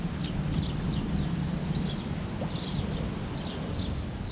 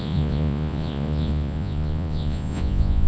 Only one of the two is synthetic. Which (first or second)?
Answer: second